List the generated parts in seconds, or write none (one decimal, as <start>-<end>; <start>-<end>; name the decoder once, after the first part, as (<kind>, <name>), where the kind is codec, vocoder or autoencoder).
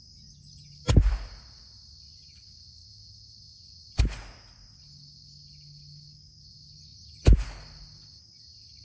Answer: none